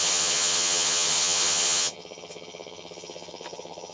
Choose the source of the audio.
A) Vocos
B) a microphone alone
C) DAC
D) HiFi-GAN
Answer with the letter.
D